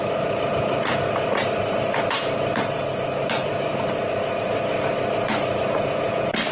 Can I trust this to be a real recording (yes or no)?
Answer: no